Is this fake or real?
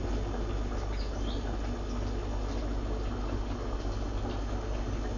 real